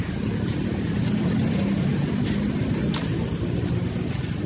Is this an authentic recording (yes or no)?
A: yes